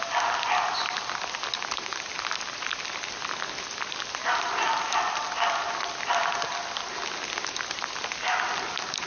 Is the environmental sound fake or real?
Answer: real